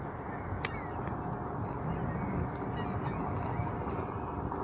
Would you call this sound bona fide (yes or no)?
yes